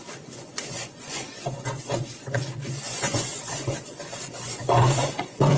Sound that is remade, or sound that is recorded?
remade